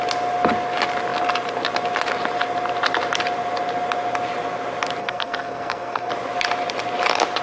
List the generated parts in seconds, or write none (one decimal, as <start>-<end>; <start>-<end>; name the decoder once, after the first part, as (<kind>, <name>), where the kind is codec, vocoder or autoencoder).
5.0-6.1 (codec, SNAC)